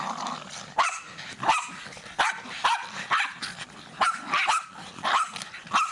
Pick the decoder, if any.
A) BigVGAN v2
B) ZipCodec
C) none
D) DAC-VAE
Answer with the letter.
C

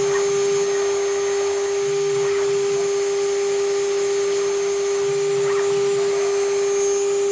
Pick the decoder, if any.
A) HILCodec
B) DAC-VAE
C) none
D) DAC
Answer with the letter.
C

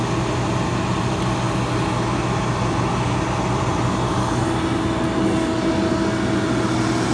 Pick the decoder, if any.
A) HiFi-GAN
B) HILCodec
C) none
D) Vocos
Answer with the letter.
C